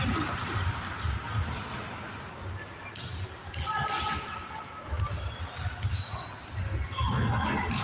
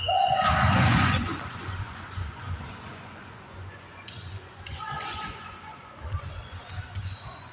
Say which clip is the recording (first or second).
first